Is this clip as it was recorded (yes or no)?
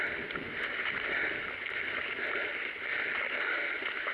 yes